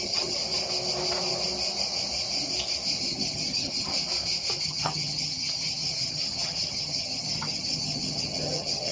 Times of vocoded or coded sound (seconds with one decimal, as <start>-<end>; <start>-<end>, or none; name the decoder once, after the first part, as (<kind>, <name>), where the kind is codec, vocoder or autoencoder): 0.0-0.4 (vocoder, HiFi-GAN); 3.0-3.9; 4.6-8.9